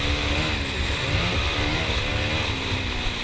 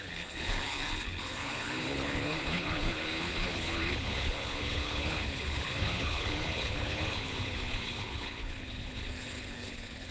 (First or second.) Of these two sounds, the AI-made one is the second